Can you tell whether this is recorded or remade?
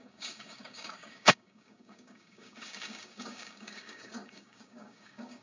remade